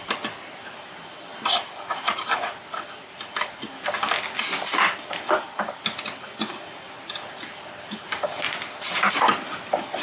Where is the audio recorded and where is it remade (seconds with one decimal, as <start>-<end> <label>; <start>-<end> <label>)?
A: 0.0-10.0 recorded